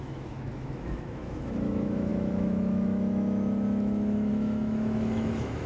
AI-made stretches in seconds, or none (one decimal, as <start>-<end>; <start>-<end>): 0.0-5.7